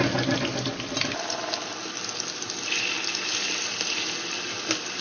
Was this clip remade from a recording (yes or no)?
no